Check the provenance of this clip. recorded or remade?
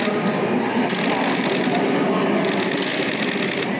recorded